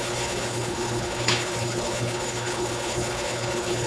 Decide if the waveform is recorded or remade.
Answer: remade